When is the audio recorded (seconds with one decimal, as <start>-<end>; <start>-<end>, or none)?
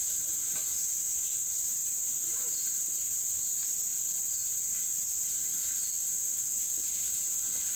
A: 0.0-7.8